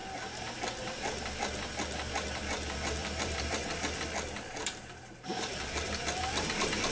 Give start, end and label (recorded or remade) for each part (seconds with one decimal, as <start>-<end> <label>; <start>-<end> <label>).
0.0-3.0 recorded; 3.0-3.7 remade; 3.7-4.6 recorded; 4.6-5.9 remade; 5.9-6.9 recorded